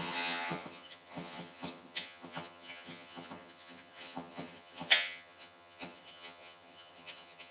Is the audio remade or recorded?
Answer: remade